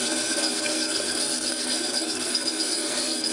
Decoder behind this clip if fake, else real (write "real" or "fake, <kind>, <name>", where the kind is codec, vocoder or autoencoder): fake, codec, SNAC